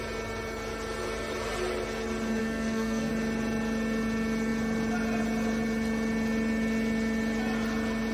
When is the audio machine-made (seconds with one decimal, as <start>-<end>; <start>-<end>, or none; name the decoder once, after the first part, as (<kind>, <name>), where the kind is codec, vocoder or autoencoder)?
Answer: 2.4-3.1 (codec, SNAC)